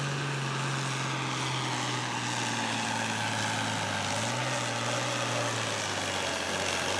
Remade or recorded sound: recorded